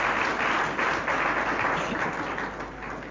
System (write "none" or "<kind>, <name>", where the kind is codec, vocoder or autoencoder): none